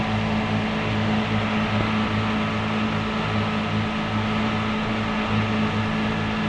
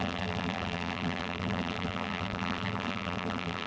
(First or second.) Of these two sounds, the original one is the first